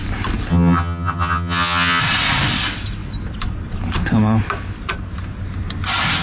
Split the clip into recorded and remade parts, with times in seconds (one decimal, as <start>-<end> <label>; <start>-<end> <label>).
0.0-0.5 recorded; 0.5-2.0 remade; 2.0-6.2 recorded